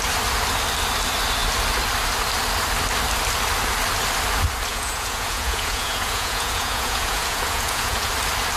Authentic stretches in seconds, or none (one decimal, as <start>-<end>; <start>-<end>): 0.0-4.7; 8.1-8.6